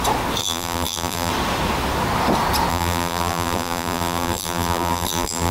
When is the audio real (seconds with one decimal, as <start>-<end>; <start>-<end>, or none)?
0.0-0.4; 1.3-2.7